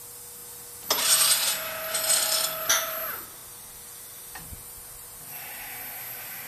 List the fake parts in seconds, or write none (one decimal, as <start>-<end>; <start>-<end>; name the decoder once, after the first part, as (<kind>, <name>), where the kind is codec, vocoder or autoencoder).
none